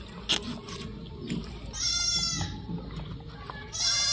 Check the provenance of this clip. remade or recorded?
recorded